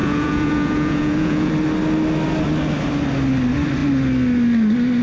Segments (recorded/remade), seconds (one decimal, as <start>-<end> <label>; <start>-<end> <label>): 0.0-1.5 remade; 1.5-5.0 recorded